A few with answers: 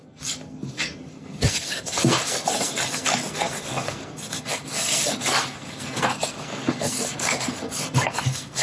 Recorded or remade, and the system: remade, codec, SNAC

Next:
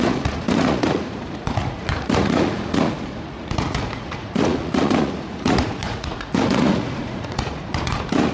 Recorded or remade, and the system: remade, vocoder, Vocos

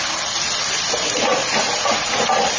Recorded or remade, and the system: recorded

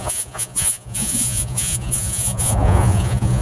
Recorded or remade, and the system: remade, vocoder, Vocos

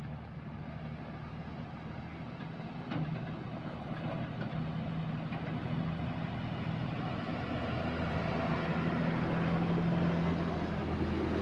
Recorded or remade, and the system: recorded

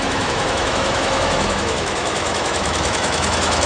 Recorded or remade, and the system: remade, autoencoder, DAC-VAE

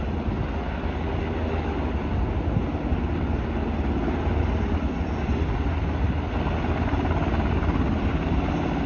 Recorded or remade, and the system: recorded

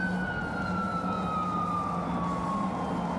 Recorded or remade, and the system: recorded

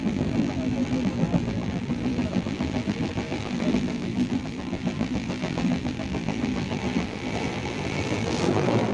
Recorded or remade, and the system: remade, vocoder, BigVGAN v2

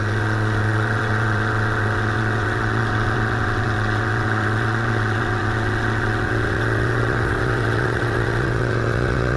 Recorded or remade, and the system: remade, vocoder, WaveNeXt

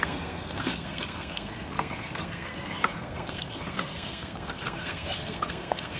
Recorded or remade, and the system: remade, codec, SNAC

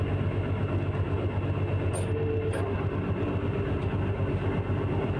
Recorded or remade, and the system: recorded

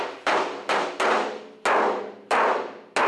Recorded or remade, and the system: recorded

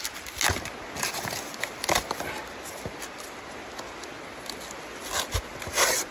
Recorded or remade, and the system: recorded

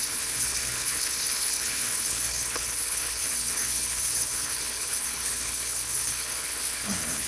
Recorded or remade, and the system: remade, codec, HILCodec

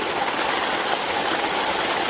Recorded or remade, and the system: recorded